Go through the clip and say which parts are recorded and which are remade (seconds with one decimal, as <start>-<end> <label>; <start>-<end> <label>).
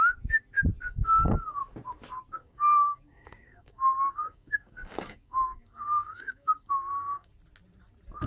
0.0-0.9 recorded; 0.9-1.6 remade; 1.6-2.4 recorded; 2.4-7.3 remade; 7.3-8.3 recorded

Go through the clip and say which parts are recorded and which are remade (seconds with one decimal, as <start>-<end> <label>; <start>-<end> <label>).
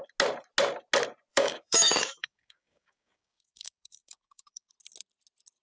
0.0-1.3 recorded; 1.3-4.7 remade; 4.7-5.6 recorded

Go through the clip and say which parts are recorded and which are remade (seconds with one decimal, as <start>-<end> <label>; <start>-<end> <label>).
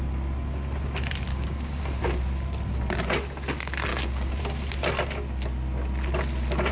0.0-1.3 recorded; 1.3-1.8 remade; 1.8-3.9 recorded; 3.9-4.4 remade; 4.4-6.7 recorded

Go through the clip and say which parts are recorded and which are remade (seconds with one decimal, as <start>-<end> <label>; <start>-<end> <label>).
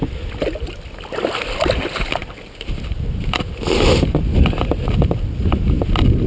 0.0-6.3 recorded